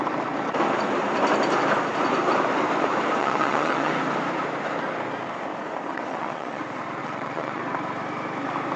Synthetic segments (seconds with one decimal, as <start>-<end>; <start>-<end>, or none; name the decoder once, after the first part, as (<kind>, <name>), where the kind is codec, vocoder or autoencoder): 3.2-3.9 (vocoder, WaveNeXt); 5.9-6.6; 7.0-7.6